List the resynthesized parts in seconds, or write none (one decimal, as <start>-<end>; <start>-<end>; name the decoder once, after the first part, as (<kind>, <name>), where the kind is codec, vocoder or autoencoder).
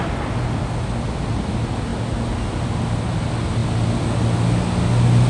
none